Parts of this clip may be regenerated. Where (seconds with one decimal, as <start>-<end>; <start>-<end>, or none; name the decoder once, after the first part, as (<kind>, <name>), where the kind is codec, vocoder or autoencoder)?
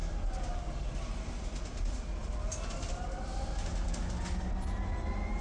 none